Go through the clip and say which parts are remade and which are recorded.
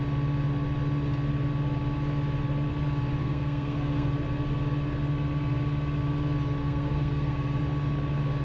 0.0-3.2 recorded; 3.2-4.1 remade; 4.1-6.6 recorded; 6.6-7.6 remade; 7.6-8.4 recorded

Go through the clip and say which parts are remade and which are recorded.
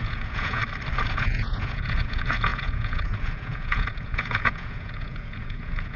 0.0-0.6 remade; 0.6-1.1 recorded; 1.1-6.0 remade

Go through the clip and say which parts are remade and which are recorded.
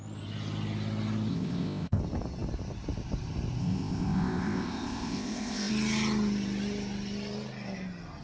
0.0-1.3 recorded; 1.3-2.0 remade; 2.0-3.6 recorded; 3.6-5.7 remade; 5.7-8.2 recorded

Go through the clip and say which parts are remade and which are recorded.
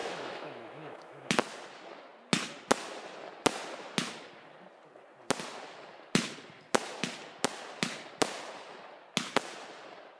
0.0-1.3 remade; 1.3-10.2 recorded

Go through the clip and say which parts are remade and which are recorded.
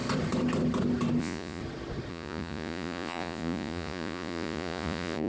0.0-1.2 recorded; 1.2-1.6 remade; 1.6-2.1 recorded; 2.1-5.3 remade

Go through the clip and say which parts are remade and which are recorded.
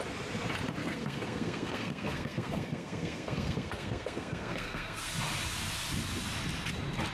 0.0-0.8 recorded; 0.8-5.1 remade; 5.1-7.1 recorded